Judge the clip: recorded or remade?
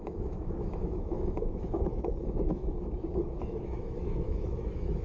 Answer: remade